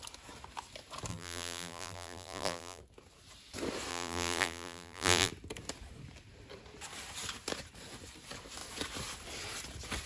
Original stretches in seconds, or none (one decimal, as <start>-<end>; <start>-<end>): 0.0-1.1; 2.8-3.9; 5.3-10.1